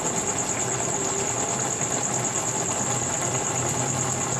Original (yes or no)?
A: yes